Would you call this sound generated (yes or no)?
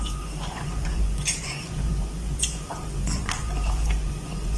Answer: yes